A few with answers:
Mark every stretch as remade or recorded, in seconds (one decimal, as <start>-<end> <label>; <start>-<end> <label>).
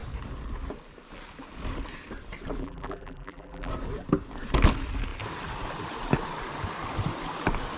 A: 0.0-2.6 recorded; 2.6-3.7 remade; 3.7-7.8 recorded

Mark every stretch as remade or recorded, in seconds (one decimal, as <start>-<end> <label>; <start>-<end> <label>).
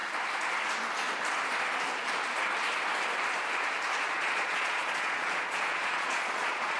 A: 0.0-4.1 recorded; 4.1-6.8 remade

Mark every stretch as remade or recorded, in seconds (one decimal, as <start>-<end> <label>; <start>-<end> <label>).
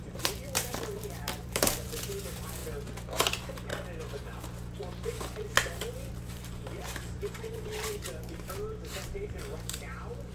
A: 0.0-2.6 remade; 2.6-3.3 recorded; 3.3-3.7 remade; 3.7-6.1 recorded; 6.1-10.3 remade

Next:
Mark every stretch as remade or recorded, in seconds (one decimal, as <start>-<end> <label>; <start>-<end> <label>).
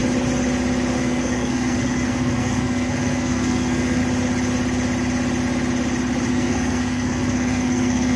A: 0.0-1.0 recorded; 1.0-4.0 remade; 4.0-6.3 recorded; 6.3-8.2 remade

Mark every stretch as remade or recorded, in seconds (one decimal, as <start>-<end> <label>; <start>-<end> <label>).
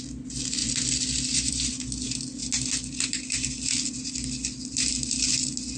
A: 0.0-5.8 recorded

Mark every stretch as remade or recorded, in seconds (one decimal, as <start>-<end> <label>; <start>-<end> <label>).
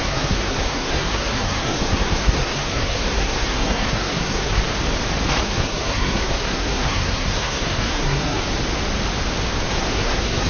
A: 0.0-4.6 remade; 4.6-5.4 recorded; 5.4-8.4 remade; 8.4-9.7 recorded; 9.7-10.5 remade